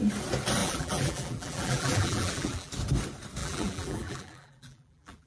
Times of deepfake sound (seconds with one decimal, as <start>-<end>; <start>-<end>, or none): 0.6-2.7; 3.4-5.3